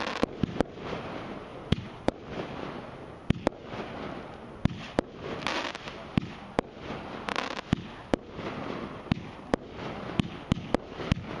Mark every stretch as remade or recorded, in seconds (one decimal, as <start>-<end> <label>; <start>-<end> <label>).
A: 0.0-1.5 recorded; 1.5-2.1 remade; 2.1-11.4 recorded